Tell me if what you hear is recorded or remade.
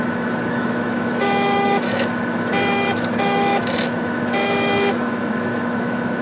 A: remade